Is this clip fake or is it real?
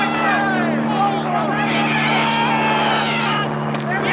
real